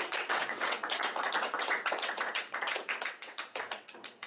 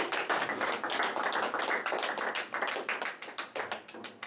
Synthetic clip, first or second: first